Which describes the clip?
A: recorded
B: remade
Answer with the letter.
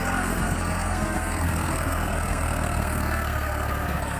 B